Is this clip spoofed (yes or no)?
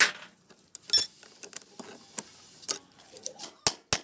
no